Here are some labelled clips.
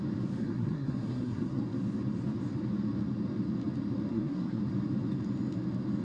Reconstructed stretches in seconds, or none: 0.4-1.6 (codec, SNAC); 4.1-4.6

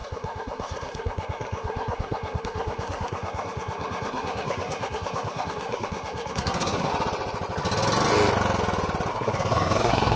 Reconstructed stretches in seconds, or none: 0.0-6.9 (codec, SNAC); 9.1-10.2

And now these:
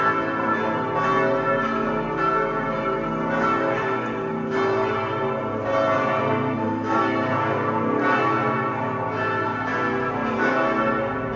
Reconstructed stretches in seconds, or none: 6.2-7.0 (codec, SNAC)

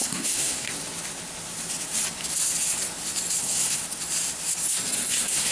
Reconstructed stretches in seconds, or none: 0.0-0.7 (codec, SNAC); 3.4-3.8; 5.1-5.5

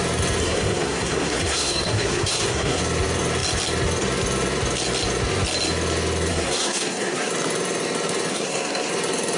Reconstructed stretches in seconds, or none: 0.4-2.8 (codec, SNAC); 6.3-7.3; 8.3-8.9